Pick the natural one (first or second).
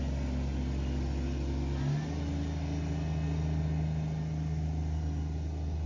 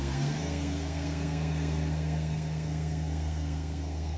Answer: first